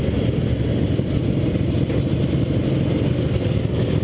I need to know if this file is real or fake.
real